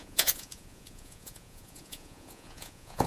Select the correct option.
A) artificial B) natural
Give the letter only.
A